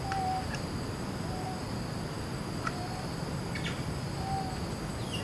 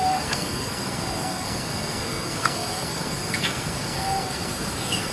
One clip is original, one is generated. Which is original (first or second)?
first